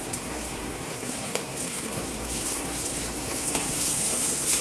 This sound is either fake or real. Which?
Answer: fake